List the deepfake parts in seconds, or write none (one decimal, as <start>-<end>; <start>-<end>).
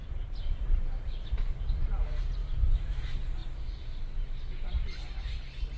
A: 0.0-1.4; 2.4-3.0